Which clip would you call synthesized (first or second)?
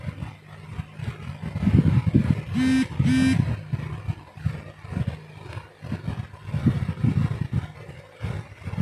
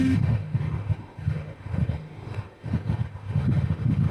second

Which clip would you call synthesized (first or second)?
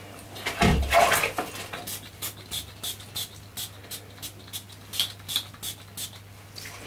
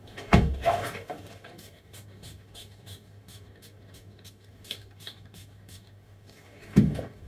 second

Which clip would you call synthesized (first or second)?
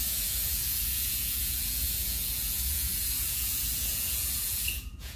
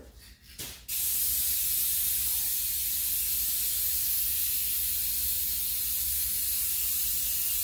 first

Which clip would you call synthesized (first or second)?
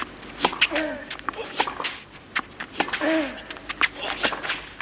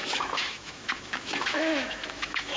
second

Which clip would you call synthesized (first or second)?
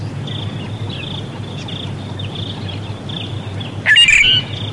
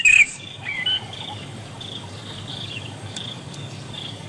second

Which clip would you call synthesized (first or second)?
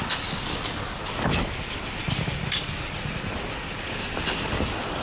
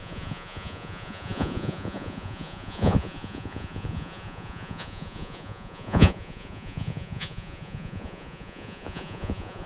second